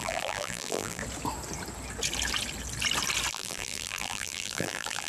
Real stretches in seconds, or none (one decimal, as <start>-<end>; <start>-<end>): 1.0-3.3